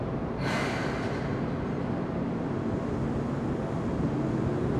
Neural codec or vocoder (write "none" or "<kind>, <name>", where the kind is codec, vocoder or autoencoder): none